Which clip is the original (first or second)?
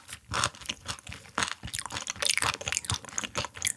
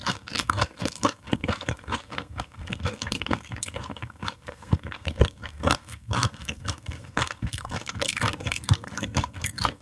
first